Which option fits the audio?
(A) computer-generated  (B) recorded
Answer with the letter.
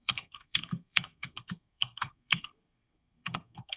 A